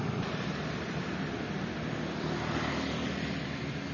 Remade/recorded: recorded